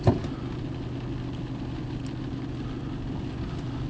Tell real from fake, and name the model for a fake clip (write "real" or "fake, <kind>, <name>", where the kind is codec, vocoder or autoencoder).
real